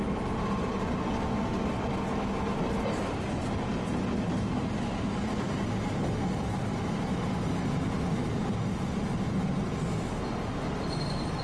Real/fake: real